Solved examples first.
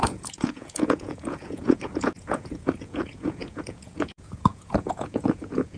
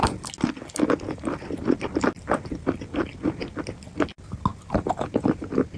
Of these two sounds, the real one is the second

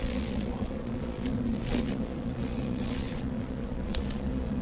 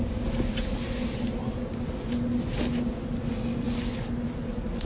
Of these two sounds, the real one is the second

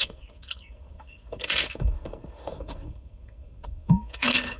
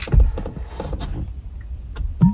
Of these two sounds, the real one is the second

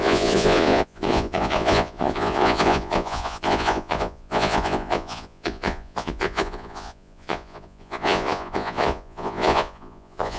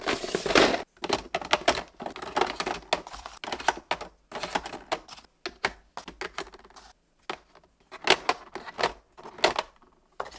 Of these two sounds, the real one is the second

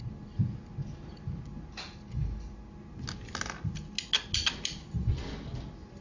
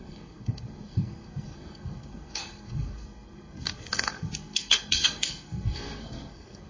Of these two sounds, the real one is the first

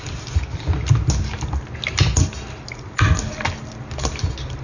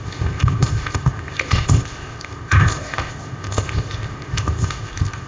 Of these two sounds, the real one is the first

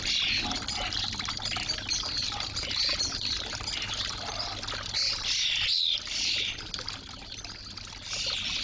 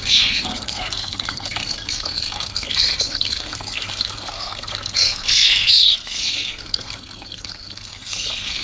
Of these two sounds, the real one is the first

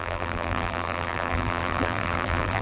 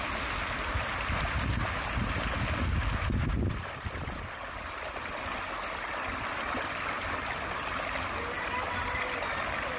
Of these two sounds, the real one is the second